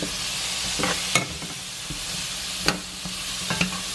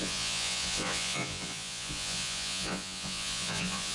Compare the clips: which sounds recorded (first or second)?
first